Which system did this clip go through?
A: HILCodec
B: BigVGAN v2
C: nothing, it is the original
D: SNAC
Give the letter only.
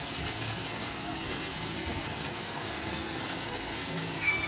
D